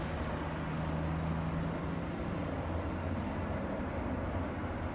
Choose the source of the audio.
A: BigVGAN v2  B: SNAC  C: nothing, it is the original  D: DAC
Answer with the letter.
C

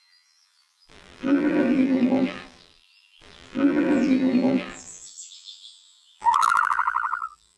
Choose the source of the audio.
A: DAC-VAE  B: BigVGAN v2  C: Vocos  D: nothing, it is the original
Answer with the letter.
B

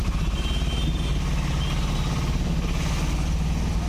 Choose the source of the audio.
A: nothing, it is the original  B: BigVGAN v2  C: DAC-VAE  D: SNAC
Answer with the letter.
A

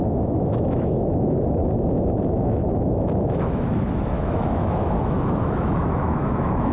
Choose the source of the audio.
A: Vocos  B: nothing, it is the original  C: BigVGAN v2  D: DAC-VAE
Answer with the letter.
D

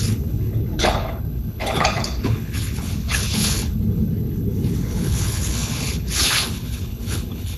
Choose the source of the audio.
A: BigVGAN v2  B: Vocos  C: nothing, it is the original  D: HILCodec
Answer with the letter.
D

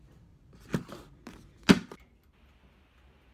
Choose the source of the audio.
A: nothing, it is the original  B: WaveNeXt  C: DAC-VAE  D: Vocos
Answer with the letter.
A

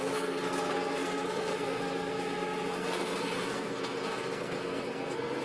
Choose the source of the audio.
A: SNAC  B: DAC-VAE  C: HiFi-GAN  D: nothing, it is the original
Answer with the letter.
A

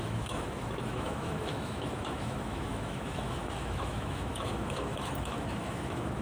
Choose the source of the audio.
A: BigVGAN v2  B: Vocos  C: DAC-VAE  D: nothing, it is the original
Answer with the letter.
C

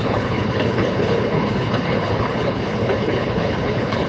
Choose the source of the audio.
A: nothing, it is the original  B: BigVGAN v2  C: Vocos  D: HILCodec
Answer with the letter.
D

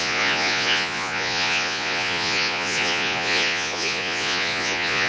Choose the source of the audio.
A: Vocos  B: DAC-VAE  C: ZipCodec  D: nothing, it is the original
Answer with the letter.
A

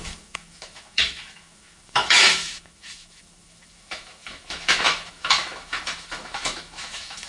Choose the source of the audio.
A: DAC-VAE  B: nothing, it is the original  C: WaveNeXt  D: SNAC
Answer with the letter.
A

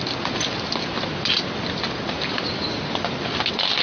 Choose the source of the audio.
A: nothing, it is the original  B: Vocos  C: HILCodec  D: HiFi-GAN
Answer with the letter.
A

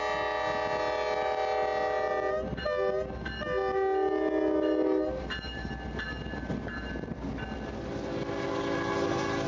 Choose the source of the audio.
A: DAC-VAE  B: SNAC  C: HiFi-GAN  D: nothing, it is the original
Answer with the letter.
D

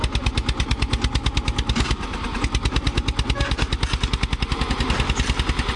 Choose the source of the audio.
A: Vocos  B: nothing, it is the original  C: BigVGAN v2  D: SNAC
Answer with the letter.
B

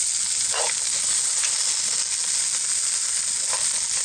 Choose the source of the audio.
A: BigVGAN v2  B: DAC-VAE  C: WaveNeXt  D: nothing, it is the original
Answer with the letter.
D